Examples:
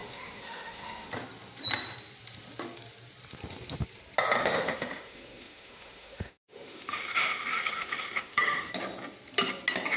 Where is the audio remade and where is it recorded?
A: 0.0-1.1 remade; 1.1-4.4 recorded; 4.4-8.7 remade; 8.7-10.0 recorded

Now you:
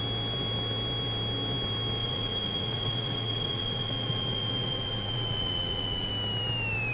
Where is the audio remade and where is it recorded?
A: 0.0-2.0 recorded; 2.0-6.1 remade; 6.1-6.9 recorded